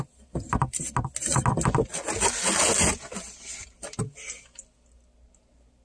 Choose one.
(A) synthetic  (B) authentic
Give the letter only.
B